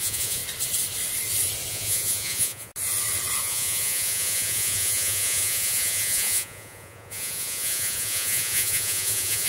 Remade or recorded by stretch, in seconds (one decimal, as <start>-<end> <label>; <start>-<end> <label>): 0.0-0.4 remade; 0.4-1.7 recorded; 1.7-2.7 remade; 2.7-3.4 recorded; 3.4-9.5 remade